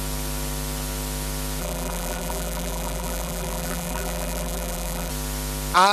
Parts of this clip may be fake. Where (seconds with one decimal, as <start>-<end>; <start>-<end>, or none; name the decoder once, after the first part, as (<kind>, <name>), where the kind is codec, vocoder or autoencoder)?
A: 1.6-5.1 (vocoder, BigVGAN v2)